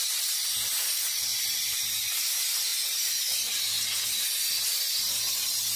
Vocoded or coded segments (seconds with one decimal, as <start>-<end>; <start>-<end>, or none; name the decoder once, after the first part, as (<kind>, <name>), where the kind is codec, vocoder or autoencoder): none